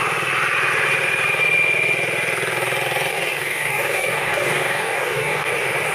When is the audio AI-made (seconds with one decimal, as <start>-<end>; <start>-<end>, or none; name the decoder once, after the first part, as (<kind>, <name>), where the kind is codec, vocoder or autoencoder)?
3.1-5.5 (codec, DAC)